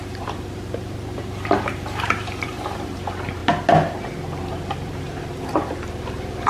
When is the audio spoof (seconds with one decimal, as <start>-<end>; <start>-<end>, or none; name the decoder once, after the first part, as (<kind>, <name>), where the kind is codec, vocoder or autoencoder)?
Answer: 0.0-3.4 (vocoder, BigVGAN v2); 4.5-6.5